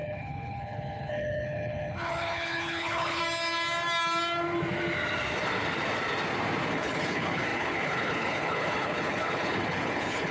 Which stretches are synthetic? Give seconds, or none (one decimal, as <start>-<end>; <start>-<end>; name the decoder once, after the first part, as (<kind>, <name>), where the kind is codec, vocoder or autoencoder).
0.0-3.2 (codec, HILCodec); 6.7-10.3